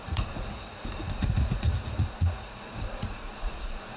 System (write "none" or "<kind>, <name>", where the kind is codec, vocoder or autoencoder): vocoder, Vocos